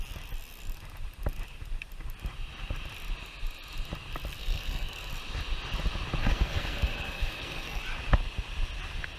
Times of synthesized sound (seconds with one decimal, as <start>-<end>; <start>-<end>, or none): 4.4-5.1; 6.2-7.8